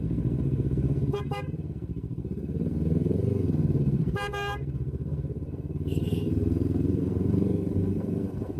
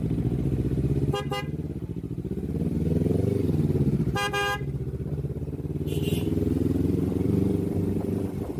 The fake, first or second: first